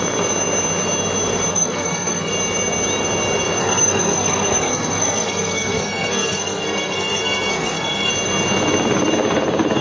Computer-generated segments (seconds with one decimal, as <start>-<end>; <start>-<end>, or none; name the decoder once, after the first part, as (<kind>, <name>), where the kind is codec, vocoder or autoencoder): 1.5-2.3 (codec, SNAC); 3.6-8.1